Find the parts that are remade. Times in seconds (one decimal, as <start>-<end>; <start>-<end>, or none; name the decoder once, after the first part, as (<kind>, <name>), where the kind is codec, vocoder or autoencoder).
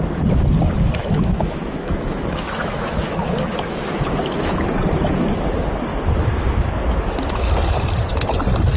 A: 1.0-4.7 (autoencoder, DAC-VAE)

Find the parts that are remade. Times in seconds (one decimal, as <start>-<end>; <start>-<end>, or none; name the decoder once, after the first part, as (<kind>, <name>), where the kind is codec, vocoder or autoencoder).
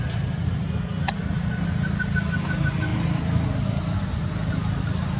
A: none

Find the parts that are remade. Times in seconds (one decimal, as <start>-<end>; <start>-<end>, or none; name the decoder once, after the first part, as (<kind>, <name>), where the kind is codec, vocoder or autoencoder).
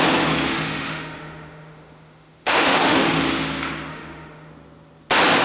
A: 0.5-3.2 (autoencoder, DAC-VAE); 3.9-4.5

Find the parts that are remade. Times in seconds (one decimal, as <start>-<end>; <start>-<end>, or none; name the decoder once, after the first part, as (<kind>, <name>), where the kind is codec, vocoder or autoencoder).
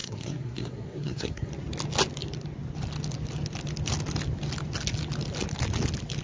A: 0.0-1.5 (codec, SNAC)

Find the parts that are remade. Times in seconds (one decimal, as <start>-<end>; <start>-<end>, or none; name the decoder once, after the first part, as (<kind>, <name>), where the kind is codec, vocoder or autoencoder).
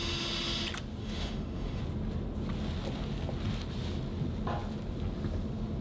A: 1.0-1.8 (autoencoder, DAC-VAE)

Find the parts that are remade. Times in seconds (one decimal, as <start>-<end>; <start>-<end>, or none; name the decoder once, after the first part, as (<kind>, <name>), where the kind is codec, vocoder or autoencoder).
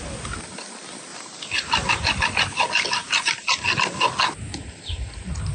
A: none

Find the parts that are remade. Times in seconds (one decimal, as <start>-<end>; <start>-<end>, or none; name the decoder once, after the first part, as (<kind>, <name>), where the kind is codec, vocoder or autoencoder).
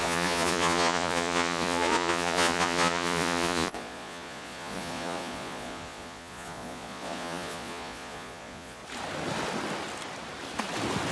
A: 0.0-8.8 (vocoder, Vocos)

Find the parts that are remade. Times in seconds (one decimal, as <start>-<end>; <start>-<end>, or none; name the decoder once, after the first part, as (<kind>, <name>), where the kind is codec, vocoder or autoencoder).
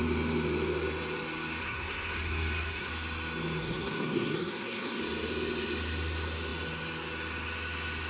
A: 1.6-2.9 (codec, SNAC); 3.6-5.0